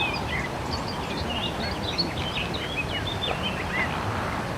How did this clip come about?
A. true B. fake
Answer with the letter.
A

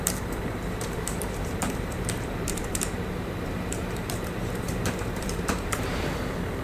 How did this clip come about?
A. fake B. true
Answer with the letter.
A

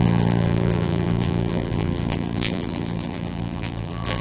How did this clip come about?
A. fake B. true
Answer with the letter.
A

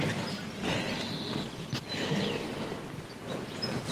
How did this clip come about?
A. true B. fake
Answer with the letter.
A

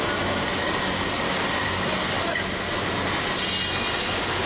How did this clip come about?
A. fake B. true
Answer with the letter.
B